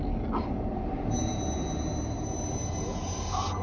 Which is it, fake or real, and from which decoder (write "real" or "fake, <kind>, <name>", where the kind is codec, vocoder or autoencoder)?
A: real